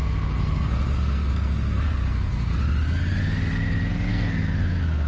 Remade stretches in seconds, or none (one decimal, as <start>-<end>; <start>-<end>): 0.0-2.5; 4.1-5.1

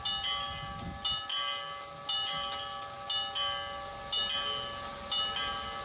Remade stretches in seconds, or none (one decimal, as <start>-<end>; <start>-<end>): none

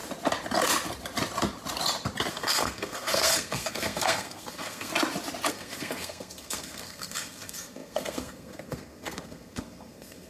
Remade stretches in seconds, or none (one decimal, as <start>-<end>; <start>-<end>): 2.3-4.9; 5.5-10.3

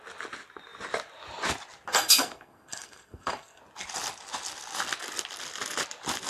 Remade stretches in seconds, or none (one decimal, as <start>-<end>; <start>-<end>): 1.9-3.6

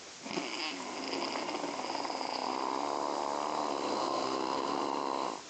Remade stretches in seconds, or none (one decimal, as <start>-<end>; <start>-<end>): 3.9-4.8